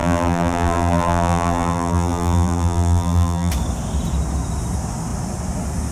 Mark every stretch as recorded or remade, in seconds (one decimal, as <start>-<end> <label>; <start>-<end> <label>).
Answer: 0.0-3.5 remade; 3.5-5.9 recorded